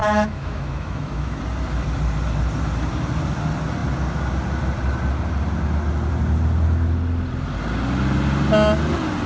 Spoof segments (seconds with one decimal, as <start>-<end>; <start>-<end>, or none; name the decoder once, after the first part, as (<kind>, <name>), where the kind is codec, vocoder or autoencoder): 0.0-1.4 (autoencoder, DAC-VAE)